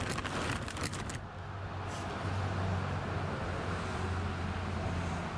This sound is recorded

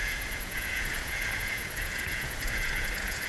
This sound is remade